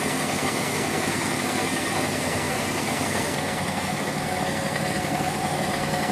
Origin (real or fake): fake